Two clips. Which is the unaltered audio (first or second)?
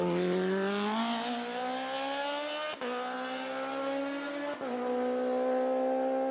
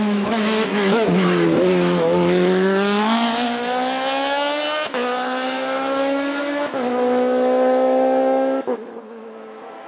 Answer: first